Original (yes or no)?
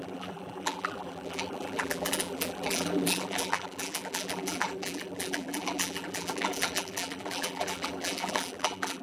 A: no